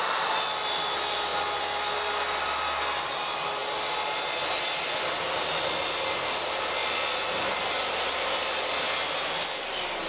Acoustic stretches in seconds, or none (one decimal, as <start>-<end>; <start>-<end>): 0.0-10.1